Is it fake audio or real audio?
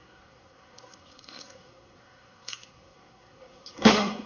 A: fake